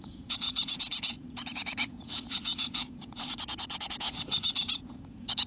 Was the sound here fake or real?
fake